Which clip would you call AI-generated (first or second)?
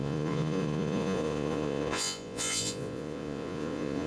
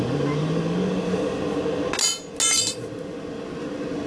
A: first